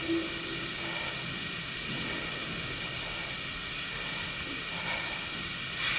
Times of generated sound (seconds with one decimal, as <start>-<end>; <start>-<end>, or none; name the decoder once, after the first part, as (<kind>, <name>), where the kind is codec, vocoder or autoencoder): 0.4-1.1 (codec, DAC)